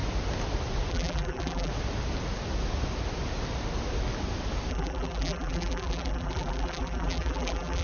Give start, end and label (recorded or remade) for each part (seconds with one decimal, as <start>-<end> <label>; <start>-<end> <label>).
0.0-0.9 recorded; 0.9-1.7 remade; 1.7-4.7 recorded; 4.7-7.8 remade

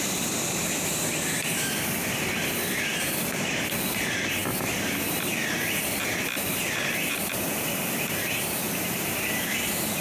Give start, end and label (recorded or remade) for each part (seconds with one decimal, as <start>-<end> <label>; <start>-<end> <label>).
0.0-10.0 remade

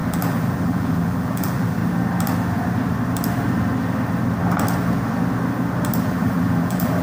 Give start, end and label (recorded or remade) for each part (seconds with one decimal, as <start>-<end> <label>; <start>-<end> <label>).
0.0-1.8 remade; 1.8-6.0 recorded; 6.0-7.0 remade

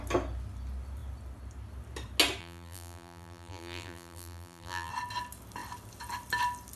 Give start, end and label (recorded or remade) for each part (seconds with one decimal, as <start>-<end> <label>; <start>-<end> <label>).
0.0-2.4 recorded; 2.4-4.9 remade; 4.9-6.8 recorded

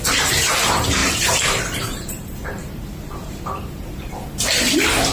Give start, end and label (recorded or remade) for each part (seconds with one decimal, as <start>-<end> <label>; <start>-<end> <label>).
0.0-1.0 recorded; 1.0-4.1 remade; 4.1-5.1 recorded